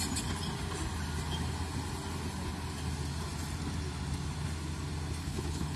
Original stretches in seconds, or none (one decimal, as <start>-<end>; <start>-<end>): 0.0-5.2

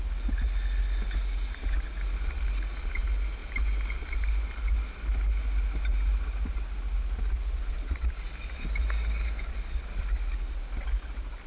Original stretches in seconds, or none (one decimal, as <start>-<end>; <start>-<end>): 0.0-11.5